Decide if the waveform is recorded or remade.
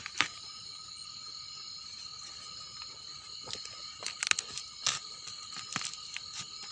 recorded